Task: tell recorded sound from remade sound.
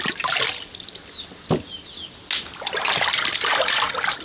recorded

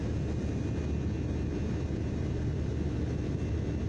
recorded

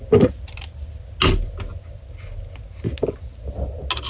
recorded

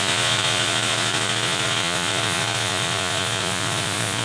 remade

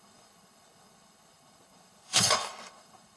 remade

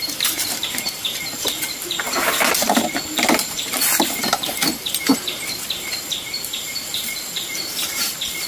remade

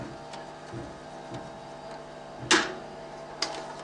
recorded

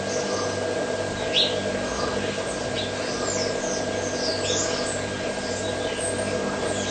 recorded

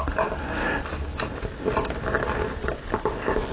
recorded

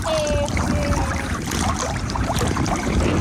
remade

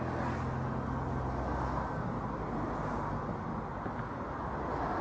recorded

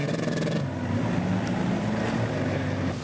recorded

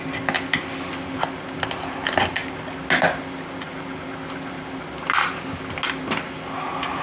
recorded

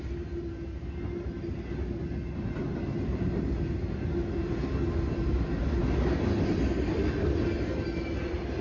recorded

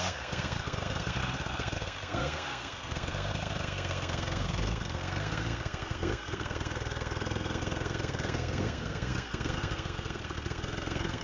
remade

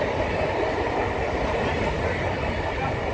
recorded